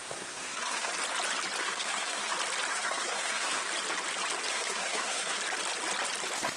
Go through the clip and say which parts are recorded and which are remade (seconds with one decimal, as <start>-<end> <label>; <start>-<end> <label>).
0.0-0.9 remade; 0.9-1.6 recorded; 1.6-2.3 remade; 2.3-2.7 recorded; 2.7-3.6 remade; 3.6-4.5 recorded; 4.5-5.4 remade; 5.4-6.6 recorded